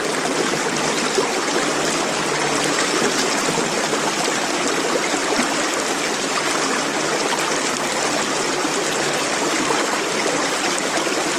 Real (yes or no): yes